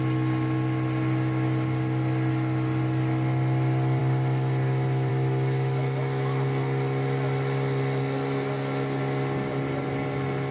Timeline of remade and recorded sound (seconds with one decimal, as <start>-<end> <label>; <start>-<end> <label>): 0.0-10.5 recorded